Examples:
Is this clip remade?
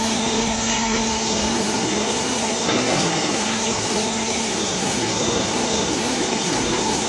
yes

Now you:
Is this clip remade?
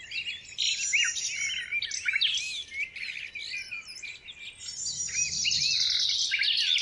no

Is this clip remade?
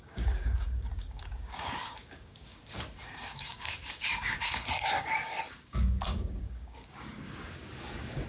yes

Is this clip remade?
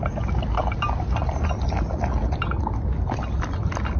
no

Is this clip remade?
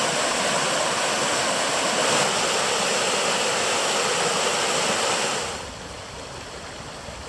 no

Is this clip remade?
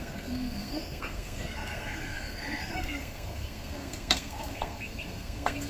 yes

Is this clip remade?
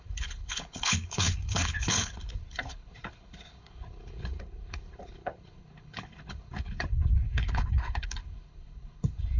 yes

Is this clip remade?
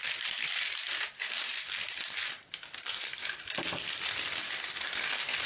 no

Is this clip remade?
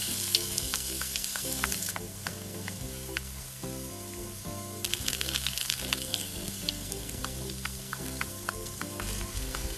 yes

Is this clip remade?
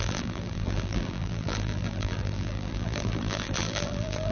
yes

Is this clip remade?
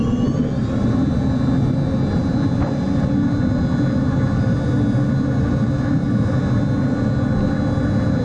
no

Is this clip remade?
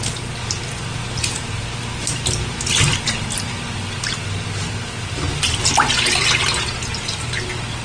no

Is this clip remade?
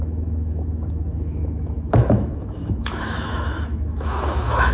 yes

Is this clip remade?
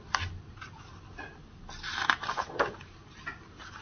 no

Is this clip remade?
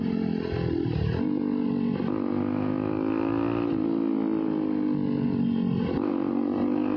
no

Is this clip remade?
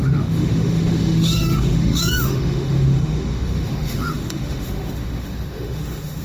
yes